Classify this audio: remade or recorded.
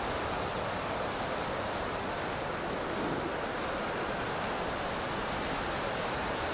recorded